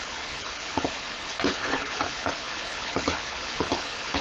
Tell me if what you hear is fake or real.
fake